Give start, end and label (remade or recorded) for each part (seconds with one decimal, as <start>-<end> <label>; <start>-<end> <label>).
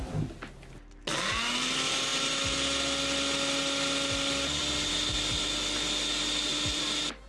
0.0-7.3 recorded